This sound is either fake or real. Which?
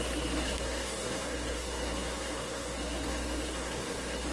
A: fake